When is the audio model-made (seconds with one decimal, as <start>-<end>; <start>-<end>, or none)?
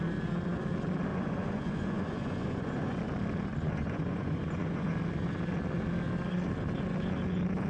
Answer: 1.1-3.0; 3.5-4.9